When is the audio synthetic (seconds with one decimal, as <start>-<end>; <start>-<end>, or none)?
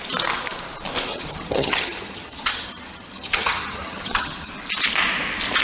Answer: 1.1-4.5